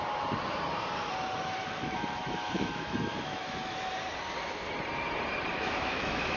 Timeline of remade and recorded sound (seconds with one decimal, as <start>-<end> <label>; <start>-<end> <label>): 0.0-1.6 recorded; 1.6-3.9 remade; 3.9-5.5 recorded; 5.5-6.4 remade